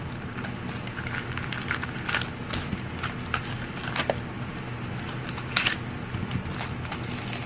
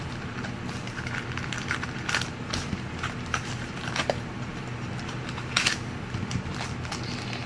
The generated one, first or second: second